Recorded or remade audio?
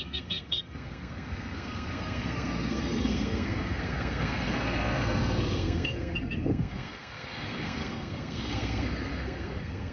remade